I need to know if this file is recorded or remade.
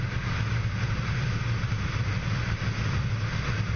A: recorded